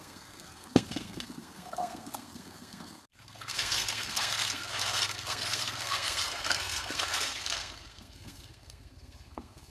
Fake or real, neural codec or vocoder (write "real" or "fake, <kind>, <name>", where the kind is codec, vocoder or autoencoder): fake, codec, SNAC